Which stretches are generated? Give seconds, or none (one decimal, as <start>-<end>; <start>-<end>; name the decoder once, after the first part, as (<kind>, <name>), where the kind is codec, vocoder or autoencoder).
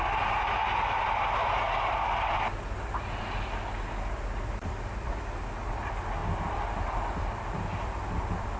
none